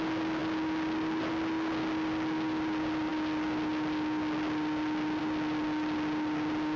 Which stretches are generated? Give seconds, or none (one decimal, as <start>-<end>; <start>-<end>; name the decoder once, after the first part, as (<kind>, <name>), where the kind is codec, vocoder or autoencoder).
none